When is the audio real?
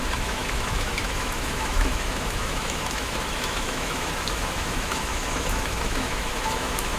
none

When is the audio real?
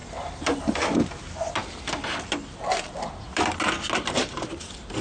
0.0-5.0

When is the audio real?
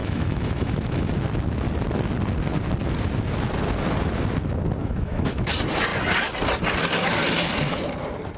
1.1-4.8; 5.5-8.4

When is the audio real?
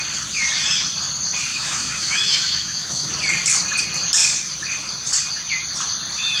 0.0-1.5; 3.1-6.4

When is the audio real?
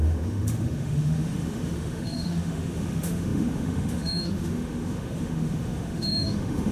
none